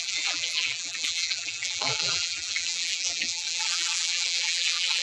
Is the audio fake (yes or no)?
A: yes